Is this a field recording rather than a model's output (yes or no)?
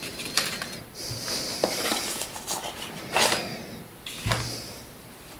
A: no